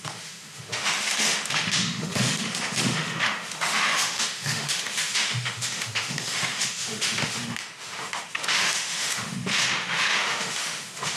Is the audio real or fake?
fake